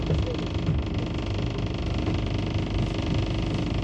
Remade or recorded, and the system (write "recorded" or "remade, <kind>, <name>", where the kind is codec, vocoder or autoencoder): recorded